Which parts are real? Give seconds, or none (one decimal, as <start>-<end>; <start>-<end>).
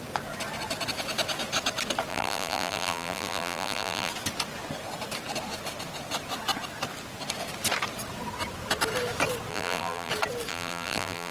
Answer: 0.0-2.1; 4.1-9.5; 10.1-10.5